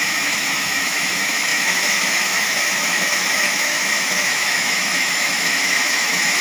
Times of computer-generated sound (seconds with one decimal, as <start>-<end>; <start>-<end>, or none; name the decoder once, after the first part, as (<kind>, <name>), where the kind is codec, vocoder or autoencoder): 0.0-6.4 (autoencoder, DAC-VAE)